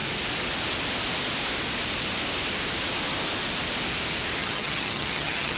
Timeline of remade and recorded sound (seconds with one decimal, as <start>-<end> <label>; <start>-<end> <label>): 0.0-4.4 recorded; 4.4-5.6 remade